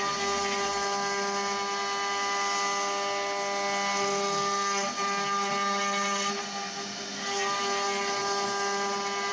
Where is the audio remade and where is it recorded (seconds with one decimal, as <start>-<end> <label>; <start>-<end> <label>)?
0.0-9.3 recorded